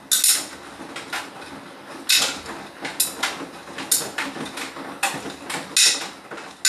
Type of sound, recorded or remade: recorded